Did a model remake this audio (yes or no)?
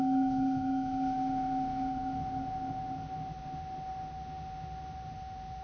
yes